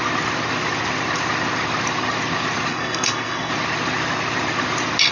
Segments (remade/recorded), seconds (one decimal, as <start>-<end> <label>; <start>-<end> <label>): 0.0-2.7 recorded; 2.7-3.5 remade; 3.5-5.1 recorded